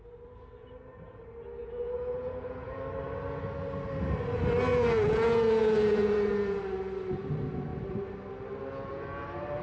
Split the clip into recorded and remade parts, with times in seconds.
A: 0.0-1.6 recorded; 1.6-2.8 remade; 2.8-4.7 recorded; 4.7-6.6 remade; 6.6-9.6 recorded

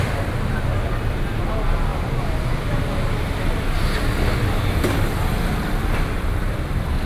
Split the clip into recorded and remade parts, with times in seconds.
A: 0.0-7.1 recorded

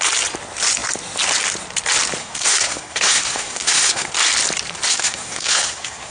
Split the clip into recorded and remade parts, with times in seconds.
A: 0.0-2.2 recorded; 2.2-4.1 remade; 4.1-4.9 recorded; 4.9-6.1 remade